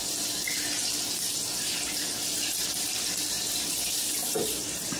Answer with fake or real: real